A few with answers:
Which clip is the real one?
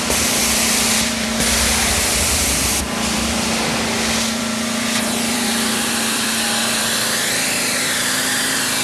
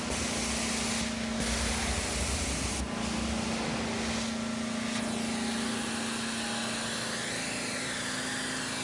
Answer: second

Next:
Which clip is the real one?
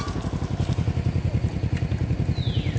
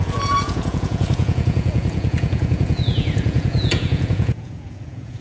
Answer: first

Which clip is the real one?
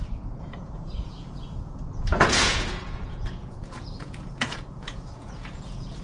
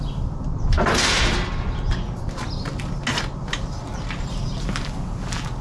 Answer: second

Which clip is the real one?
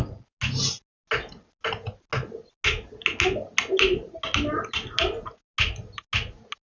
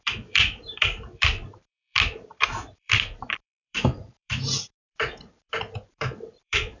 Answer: first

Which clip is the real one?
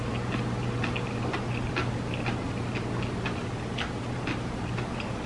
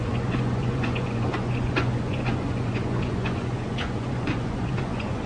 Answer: first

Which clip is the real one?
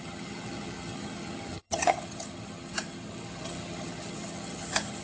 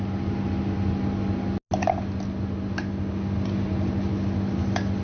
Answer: second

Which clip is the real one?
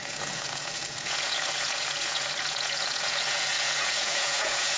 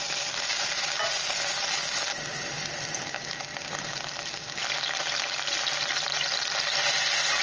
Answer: second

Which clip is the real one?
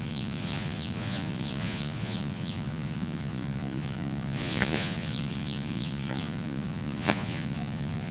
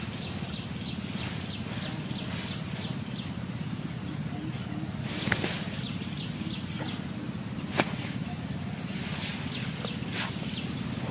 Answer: second